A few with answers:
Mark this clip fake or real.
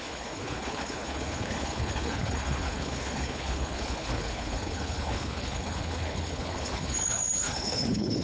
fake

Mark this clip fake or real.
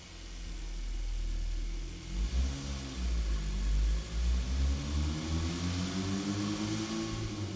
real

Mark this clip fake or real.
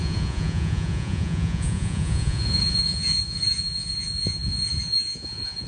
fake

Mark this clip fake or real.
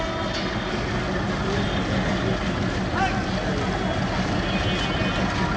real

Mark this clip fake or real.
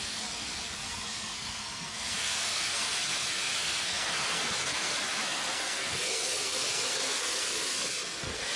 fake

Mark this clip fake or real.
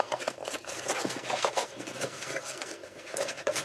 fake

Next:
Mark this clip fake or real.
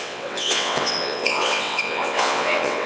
fake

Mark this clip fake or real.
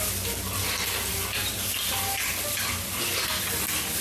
real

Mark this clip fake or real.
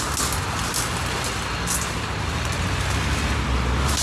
real